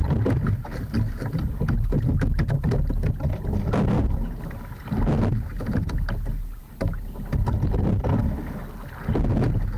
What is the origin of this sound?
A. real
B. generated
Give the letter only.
A